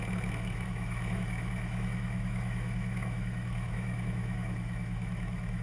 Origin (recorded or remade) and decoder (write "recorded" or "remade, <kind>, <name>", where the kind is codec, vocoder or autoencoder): remade, autoencoder, DAC-VAE